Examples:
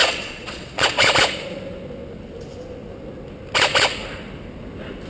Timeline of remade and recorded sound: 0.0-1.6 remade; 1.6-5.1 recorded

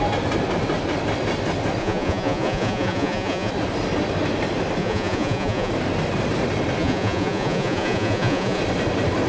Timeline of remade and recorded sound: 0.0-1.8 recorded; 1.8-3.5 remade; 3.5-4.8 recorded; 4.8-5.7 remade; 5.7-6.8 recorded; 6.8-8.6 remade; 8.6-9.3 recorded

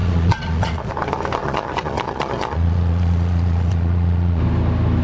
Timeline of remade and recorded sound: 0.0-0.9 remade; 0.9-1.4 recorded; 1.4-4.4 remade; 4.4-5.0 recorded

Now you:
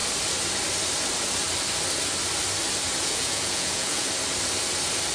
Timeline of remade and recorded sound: 0.0-3.0 recorded; 3.0-4.1 remade; 4.1-5.1 recorded